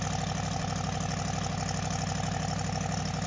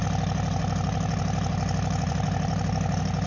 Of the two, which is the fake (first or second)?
second